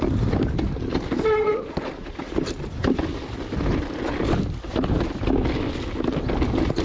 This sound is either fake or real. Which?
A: real